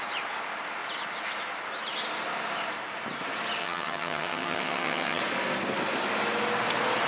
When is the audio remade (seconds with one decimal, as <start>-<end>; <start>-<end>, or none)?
3.6-5.2